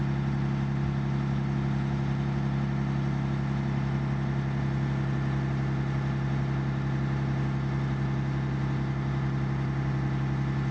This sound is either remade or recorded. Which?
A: recorded